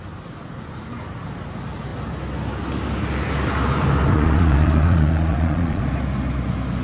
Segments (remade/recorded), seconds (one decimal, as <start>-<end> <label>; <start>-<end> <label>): 0.0-4.1 recorded; 4.1-5.8 remade; 5.8-6.8 recorded

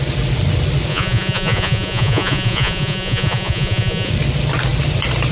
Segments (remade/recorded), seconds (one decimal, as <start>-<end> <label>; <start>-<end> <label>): 0.0-0.9 recorded; 0.9-4.1 remade; 4.1-5.3 recorded

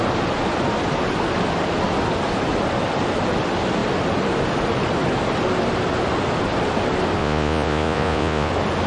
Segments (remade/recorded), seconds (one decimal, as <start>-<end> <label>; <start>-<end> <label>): 0.0-7.2 recorded; 7.2-8.5 remade; 8.5-8.9 recorded

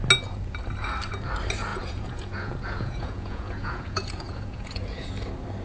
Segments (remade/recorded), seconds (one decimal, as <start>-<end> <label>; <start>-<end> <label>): 0.0-1.7 recorded; 1.7-5.1 remade; 5.1-5.6 recorded

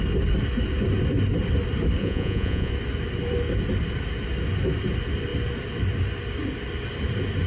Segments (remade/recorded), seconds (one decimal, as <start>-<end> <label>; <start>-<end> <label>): 0.0-2.0 recorded; 2.0-2.7 remade; 2.7-7.5 recorded

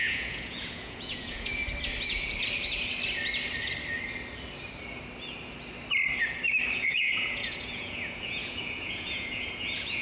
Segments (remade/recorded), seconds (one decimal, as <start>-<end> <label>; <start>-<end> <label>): 0.0-1.6 remade; 1.6-6.8 recorded; 6.8-10.0 remade

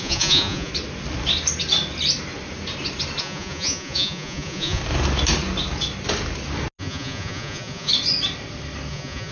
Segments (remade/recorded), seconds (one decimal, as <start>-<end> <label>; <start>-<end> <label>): 0.0-0.7 remade; 0.7-3.2 recorded; 3.2-4.8 remade; 4.8-6.8 recorded; 6.8-7.9 remade; 7.9-8.9 recorded; 8.9-9.3 remade